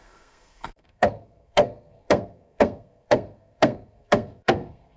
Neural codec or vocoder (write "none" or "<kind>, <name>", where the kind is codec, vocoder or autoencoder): codec, SNAC